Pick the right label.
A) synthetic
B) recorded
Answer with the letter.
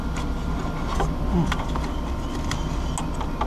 B